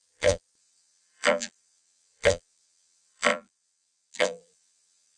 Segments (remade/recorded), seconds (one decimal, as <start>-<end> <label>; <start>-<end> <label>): 0.0-5.2 remade